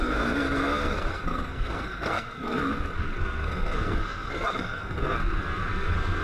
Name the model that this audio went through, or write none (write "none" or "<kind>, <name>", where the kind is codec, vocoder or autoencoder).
codec, SNAC